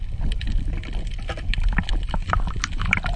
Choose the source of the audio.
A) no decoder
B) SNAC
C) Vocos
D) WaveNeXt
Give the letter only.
A